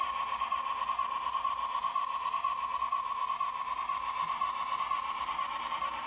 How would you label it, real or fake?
real